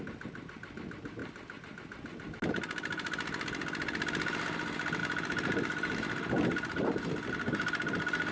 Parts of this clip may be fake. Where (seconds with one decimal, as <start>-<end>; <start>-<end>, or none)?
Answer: none

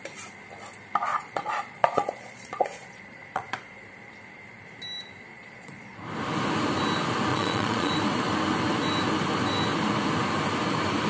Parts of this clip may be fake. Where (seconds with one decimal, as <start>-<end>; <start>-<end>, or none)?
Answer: 1.1-3.4; 5.3-6.0; 7.3-7.9

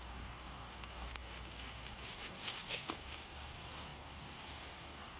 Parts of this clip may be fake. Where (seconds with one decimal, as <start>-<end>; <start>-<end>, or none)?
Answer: 0.0-5.2

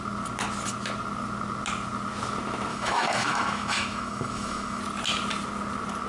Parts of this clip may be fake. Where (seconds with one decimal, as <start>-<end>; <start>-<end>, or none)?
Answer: 2.7-4.8

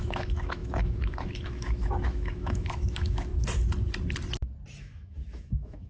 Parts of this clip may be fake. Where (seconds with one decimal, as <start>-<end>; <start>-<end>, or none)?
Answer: 0.0-3.3; 4.8-5.9

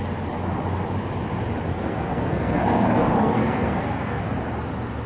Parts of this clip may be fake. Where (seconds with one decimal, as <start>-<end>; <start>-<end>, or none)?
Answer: 1.7-4.2

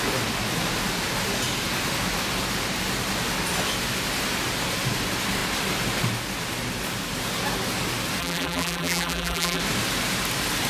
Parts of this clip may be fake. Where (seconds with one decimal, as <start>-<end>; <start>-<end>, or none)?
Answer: 8.2-9.6

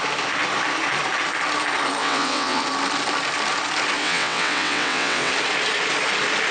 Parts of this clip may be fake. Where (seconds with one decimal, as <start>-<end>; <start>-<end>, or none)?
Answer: 2.0-2.6; 4.0-5.3